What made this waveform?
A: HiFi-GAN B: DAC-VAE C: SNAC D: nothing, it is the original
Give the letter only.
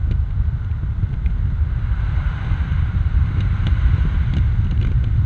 D